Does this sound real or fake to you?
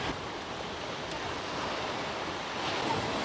real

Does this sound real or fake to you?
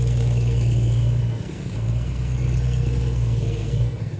fake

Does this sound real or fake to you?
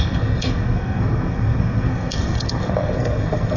fake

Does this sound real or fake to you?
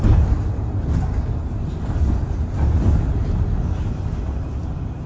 real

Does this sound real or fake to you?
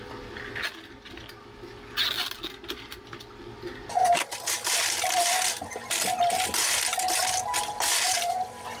real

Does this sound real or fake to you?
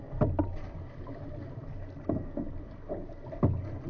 real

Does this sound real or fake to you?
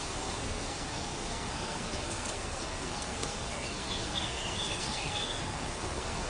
fake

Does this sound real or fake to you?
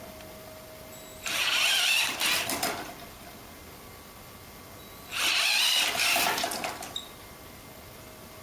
real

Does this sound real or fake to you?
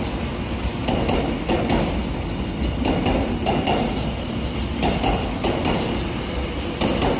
real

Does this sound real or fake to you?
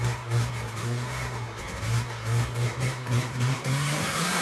fake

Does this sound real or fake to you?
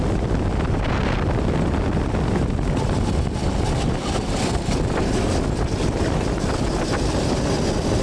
real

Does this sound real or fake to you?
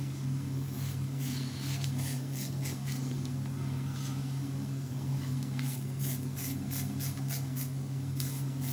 fake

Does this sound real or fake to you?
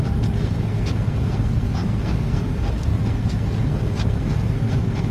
fake